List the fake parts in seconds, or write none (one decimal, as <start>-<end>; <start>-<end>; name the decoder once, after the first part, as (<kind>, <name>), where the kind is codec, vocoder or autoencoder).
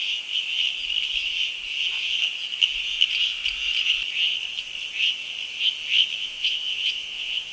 6.2-7.5 (vocoder, Vocos)